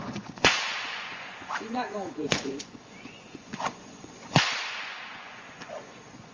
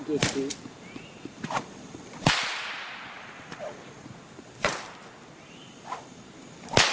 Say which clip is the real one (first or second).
second